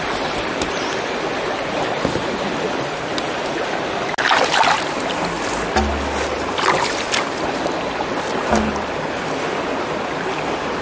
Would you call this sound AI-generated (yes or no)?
no